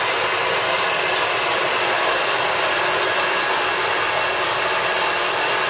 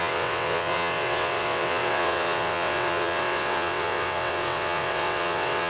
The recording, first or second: first